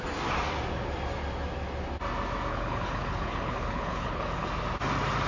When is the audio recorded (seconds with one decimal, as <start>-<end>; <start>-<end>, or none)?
0.0-2.5; 4.5-5.3